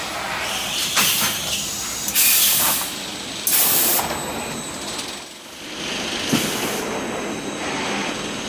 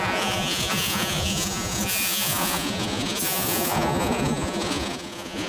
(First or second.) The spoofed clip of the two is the second